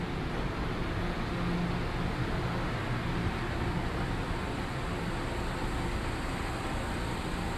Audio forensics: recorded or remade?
recorded